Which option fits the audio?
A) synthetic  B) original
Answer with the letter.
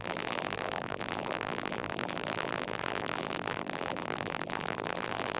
A